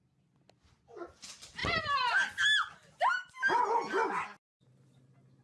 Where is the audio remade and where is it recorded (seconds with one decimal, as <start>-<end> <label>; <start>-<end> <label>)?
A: 0.0-5.4 recorded